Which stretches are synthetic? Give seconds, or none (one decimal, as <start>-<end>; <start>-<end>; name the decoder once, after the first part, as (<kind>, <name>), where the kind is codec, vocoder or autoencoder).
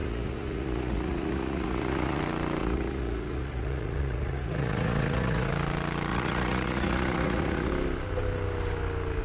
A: 0.0-2.2 (vocoder, Vocos); 2.6-5.5; 6.1-7.7